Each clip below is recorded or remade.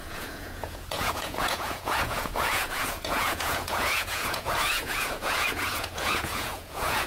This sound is remade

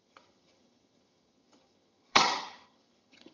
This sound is remade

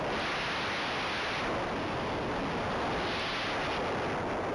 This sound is recorded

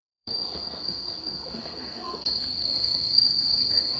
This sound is remade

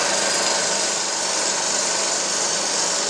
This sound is recorded